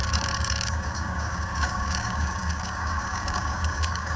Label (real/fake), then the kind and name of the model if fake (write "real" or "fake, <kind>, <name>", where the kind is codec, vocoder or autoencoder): fake, codec, DAC